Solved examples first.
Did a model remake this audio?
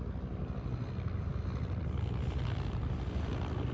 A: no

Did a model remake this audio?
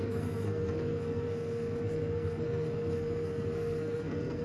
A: yes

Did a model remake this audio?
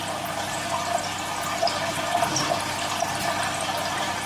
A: no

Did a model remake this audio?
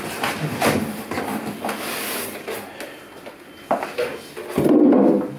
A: no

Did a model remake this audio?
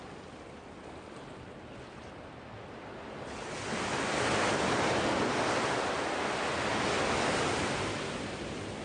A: no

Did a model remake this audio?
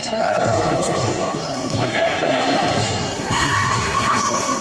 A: yes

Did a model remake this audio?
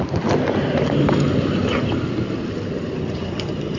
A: no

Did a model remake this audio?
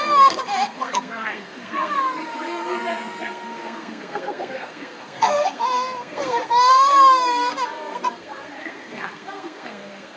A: yes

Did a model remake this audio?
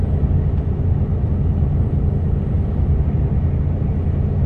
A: no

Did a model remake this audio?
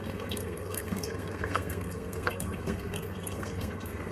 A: yes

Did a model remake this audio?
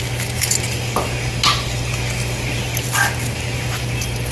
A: no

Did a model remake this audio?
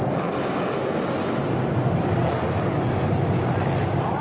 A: no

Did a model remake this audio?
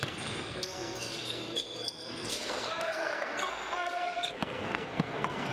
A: yes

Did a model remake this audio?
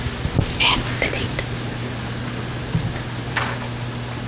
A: no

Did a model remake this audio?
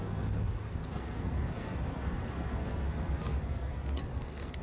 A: yes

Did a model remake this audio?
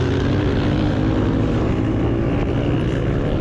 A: no